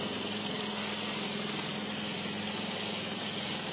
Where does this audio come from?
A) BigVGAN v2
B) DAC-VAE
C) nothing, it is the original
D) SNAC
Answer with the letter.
C